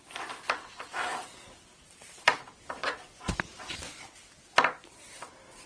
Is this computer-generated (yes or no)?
yes